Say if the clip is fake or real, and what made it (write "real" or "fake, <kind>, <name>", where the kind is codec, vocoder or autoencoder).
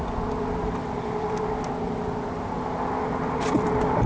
real